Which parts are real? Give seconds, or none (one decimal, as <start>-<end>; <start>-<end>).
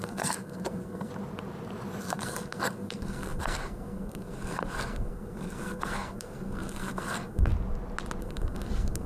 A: 1.1-2.0; 7.5-8.2